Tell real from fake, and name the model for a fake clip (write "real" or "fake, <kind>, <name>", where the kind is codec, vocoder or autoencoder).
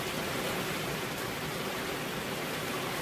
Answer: real